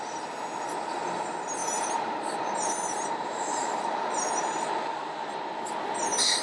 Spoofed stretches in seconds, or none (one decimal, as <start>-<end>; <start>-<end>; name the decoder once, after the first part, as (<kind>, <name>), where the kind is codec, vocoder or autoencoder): 1.6-5.4 (vocoder, BigVGAN v2)